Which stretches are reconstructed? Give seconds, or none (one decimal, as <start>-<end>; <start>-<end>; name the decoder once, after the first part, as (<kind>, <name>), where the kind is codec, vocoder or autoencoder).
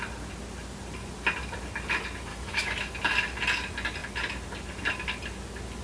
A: 2.3-2.9 (autoencoder, DAC-VAE)